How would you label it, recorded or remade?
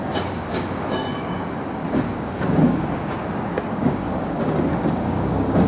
remade